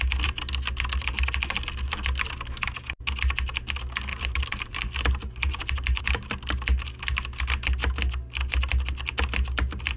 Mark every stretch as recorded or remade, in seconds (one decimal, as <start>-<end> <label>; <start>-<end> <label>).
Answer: 0.0-4.1 recorded; 4.1-6.0 remade; 6.0-10.0 recorded